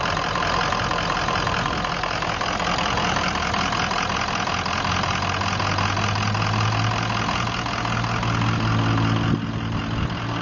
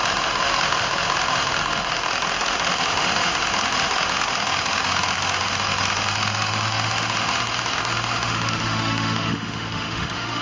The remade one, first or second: second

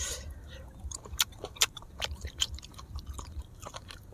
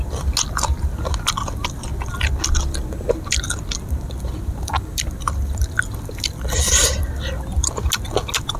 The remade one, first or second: first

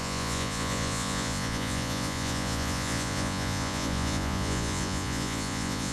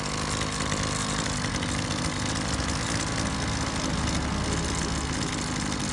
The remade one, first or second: first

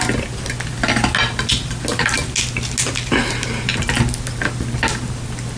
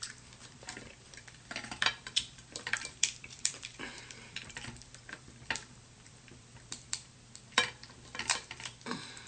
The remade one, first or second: second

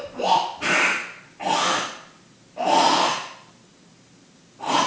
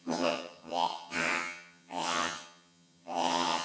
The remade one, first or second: second